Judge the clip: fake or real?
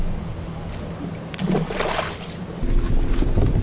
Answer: real